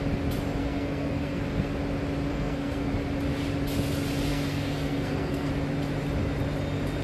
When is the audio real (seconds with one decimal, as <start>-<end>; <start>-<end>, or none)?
0.0-0.6; 1.7-2.3; 2.9-4.3; 5.5-7.0